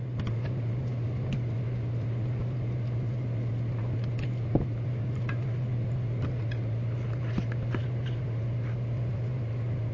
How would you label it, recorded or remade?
recorded